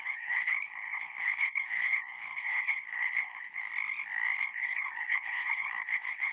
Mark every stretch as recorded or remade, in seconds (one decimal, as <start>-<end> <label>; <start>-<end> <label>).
0.0-3.6 remade; 3.6-4.4 recorded; 4.4-6.3 remade